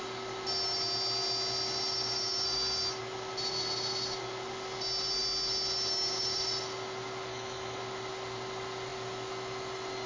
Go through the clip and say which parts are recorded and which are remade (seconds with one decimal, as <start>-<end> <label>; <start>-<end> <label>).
0.0-7.3 recorded; 7.3-7.8 remade; 7.8-10.1 recorded